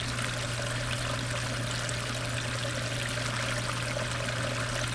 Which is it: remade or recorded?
recorded